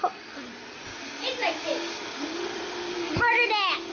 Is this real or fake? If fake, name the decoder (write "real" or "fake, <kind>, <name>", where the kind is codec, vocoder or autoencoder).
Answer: real